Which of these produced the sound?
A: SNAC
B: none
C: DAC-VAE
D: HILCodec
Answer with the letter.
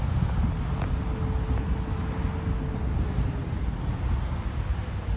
B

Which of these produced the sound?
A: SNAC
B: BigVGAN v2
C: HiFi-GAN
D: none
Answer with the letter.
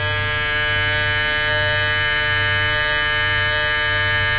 D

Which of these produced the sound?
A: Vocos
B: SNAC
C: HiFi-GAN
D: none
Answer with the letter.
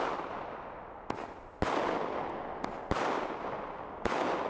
D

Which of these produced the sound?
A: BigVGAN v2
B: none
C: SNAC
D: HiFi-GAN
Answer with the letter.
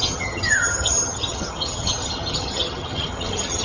D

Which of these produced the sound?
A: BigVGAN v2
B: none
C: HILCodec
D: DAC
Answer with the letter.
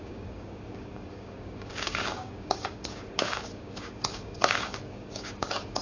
D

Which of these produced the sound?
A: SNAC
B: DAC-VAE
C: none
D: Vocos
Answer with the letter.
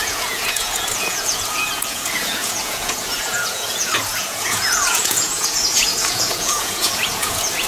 D